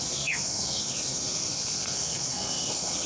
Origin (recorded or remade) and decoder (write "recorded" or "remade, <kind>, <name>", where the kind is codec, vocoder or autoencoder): remade, codec, SNAC